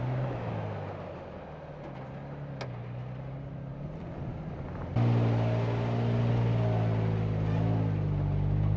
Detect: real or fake real